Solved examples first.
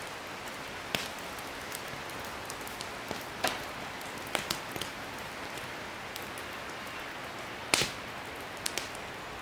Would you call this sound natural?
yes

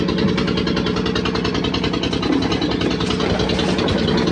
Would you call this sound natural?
yes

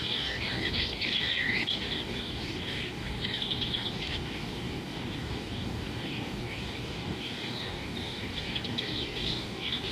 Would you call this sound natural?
no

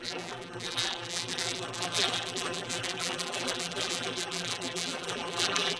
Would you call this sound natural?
no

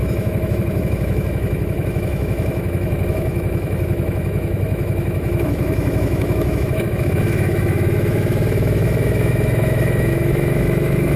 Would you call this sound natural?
no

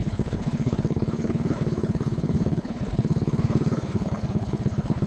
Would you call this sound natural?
no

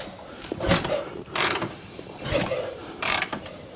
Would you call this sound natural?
no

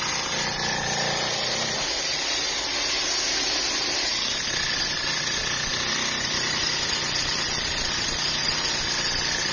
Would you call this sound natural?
yes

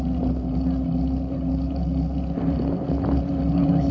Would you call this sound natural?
yes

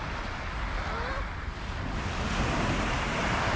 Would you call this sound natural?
yes